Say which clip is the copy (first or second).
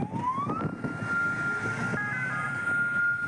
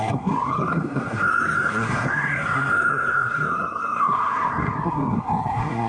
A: second